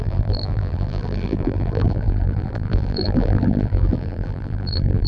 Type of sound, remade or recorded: remade